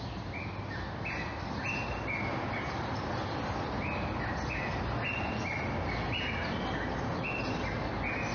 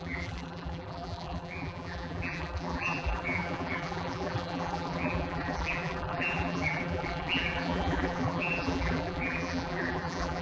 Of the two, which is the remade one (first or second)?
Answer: second